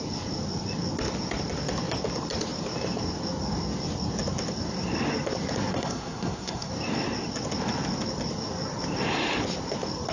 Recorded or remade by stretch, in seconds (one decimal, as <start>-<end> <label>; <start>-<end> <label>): 0.0-5.7 recorded; 5.7-6.7 remade; 6.7-10.1 recorded